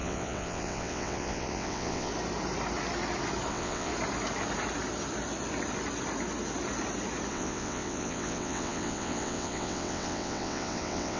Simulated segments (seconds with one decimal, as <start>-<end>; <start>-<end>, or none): 0.0-2.1; 3.5-3.9; 7.3-11.2